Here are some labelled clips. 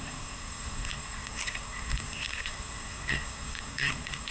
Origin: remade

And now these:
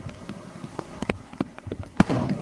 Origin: remade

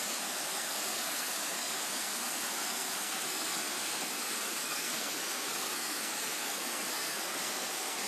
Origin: remade